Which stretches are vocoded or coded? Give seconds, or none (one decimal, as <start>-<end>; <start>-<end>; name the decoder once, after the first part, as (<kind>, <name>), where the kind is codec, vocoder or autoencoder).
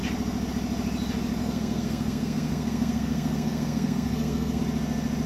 1.4-4.6 (codec, SNAC)